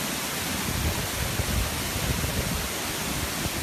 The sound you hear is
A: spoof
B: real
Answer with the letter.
B